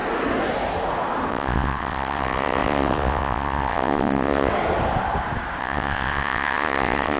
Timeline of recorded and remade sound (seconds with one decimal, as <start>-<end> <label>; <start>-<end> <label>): 0.0-1.3 recorded; 1.3-4.5 remade; 4.5-5.6 recorded; 5.6-7.2 remade